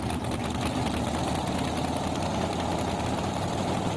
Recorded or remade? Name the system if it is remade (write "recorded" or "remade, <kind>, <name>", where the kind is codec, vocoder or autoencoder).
recorded